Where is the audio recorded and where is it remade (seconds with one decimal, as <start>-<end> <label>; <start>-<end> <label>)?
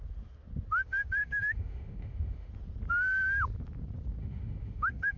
0.0-1.2 recorded; 1.2-2.5 remade; 2.5-4.2 recorded; 4.2-5.2 remade